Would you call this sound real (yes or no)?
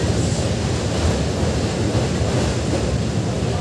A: yes